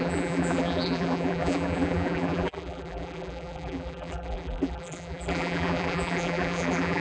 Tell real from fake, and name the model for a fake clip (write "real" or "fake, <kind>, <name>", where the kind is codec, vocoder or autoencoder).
fake, vocoder, BigVGAN v2